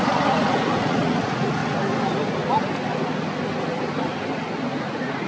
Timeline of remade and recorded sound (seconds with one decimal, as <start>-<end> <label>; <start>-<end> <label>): 0.0-1.6 remade; 1.6-4.8 recorded; 4.8-5.3 remade